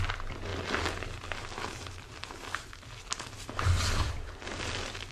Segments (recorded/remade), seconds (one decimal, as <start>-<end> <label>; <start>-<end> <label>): 0.0-5.1 recorded